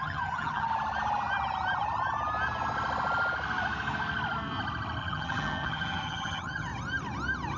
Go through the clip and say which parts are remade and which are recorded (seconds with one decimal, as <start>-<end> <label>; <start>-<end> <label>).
0.0-0.7 remade; 0.7-5.0 recorded; 5.0-6.7 remade; 6.7-7.6 recorded